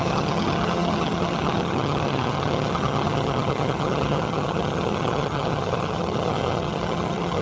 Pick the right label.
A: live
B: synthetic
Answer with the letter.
B